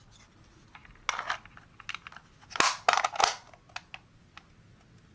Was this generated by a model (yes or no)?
no